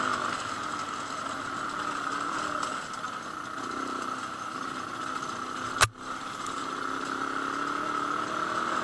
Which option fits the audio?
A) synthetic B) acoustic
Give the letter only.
B